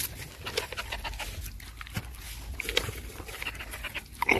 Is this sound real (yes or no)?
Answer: yes